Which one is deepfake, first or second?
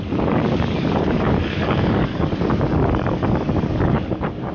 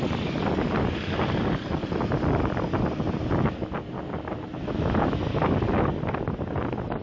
first